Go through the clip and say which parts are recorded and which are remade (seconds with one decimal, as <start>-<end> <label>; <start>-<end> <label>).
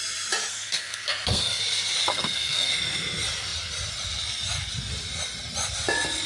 0.0-0.5 recorded; 0.5-1.6 remade; 1.6-2.1 recorded; 2.1-2.7 remade; 2.7-6.3 recorded